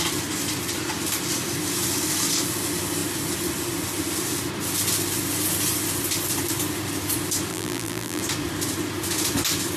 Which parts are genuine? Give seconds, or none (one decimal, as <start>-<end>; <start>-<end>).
0.0-7.5; 8.2-9.8